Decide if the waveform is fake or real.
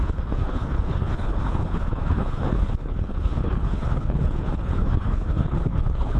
fake